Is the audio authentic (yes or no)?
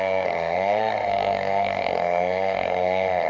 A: no